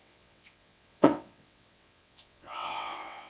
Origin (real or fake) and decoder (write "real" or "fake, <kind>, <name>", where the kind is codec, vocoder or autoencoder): fake, vocoder, WaveNeXt